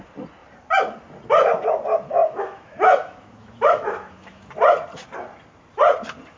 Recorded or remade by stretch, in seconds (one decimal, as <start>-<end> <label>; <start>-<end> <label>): 0.0-2.2 recorded; 2.2-4.5 remade; 4.5-6.4 recorded